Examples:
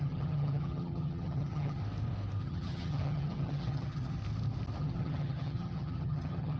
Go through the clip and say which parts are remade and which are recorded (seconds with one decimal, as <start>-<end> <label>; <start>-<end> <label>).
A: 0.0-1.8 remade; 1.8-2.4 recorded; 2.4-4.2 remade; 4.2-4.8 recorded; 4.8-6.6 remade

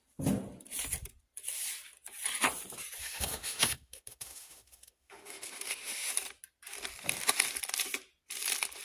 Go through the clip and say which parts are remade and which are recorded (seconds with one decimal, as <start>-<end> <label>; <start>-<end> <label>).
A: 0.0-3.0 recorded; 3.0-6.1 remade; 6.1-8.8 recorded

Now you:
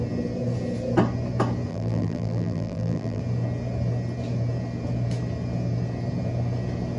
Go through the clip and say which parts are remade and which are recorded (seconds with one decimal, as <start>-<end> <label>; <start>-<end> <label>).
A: 0.0-1.7 recorded; 1.7-3.2 remade; 3.2-7.0 recorded